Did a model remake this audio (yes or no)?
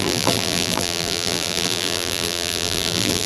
yes